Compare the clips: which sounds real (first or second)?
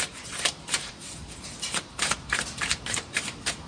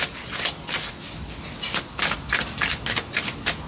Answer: second